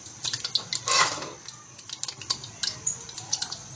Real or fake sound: real